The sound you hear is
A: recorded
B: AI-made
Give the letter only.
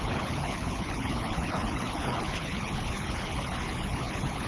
B